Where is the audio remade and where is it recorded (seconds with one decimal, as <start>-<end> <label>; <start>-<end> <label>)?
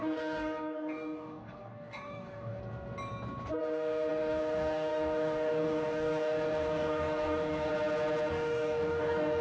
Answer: 0.0-2.6 remade; 2.6-3.6 recorded; 3.6-7.7 remade; 7.7-8.3 recorded; 8.3-9.4 remade